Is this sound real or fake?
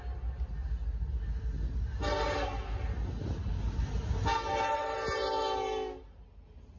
real